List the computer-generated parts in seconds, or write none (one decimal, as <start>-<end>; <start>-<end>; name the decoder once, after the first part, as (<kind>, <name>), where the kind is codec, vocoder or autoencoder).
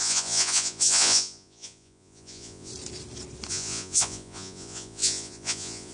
0.0-2.7 (vocoder, Vocos); 3.5-5.9